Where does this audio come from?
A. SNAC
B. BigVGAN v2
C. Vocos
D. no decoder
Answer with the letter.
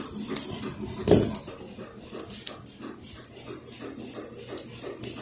D